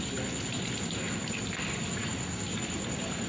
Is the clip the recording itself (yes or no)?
yes